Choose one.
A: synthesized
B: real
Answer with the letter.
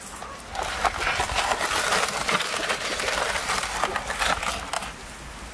B